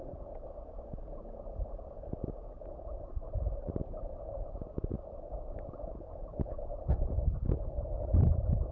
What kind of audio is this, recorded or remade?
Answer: recorded